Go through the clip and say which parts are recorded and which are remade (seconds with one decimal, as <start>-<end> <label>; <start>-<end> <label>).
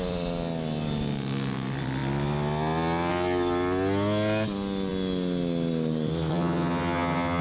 0.0-6.3 recorded; 6.3-7.4 remade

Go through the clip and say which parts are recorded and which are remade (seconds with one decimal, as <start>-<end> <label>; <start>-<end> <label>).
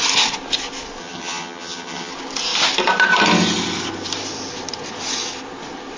0.0-1.0 recorded; 1.0-2.1 remade; 2.1-6.0 recorded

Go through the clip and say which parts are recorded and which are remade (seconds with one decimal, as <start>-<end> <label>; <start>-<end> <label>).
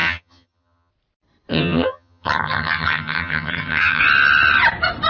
0.0-0.9 remade; 0.9-1.5 recorded; 1.5-4.0 remade; 4.0-5.1 recorded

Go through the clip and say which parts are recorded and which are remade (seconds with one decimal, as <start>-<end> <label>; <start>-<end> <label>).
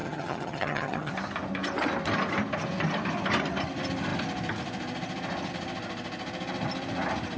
0.0-1.1 remade; 1.1-7.4 recorded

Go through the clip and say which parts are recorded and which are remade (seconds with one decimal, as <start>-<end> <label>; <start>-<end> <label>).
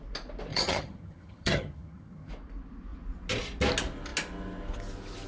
0.0-0.5 recorded; 0.5-2.3 remade; 2.3-5.3 recorded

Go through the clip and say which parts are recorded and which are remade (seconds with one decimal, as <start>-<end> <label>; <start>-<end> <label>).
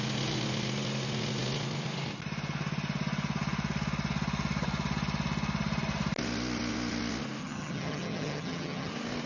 0.0-7.4 recorded; 7.4-8.9 remade; 8.9-9.3 recorded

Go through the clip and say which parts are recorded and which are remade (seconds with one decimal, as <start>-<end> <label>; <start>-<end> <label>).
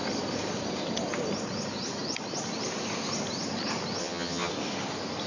0.0-4.0 recorded; 4.0-4.5 remade; 4.5-5.3 recorded